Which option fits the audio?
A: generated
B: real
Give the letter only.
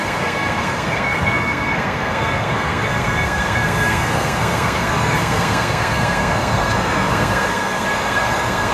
A